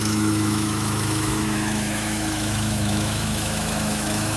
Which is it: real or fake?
fake